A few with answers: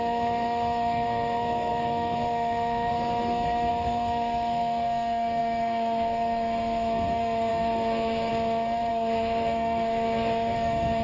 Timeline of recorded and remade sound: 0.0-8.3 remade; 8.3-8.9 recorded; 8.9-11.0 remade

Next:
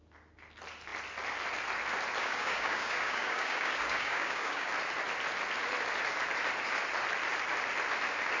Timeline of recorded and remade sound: 0.0-2.2 recorded; 2.2-4.7 remade; 4.7-8.4 recorded

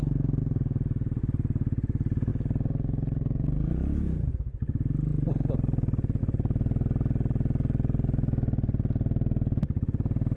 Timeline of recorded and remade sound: 0.0-0.4 recorded; 0.4-1.2 remade; 1.2-2.3 recorded; 2.3-4.3 remade; 4.3-10.4 recorded

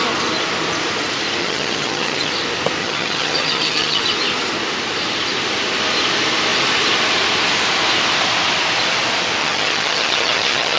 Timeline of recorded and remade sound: 0.0-1.4 recorded; 1.4-2.3 remade; 2.3-2.8 recorded; 2.8-4.0 remade; 4.0-9.4 recorded; 9.4-10.8 remade

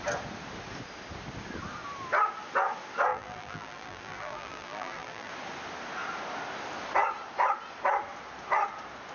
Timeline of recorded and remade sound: 0.0-3.1 recorded; 3.1-5.3 remade; 5.3-9.1 recorded

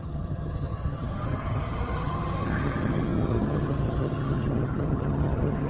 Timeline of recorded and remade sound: 0.0-5.7 remade

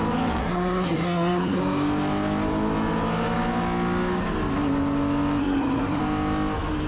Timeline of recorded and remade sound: 0.0-0.4 recorded; 0.4-1.6 remade; 1.6-5.4 recorded; 5.4-6.0 remade; 6.0-6.9 recorded

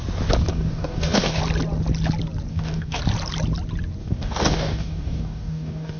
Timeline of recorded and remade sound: 0.0-0.5 recorded; 0.5-1.4 remade; 1.4-2.5 recorded; 2.5-3.0 remade; 3.0-4.0 recorded; 4.0-6.0 remade